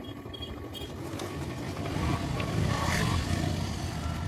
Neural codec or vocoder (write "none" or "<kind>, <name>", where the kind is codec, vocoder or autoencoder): none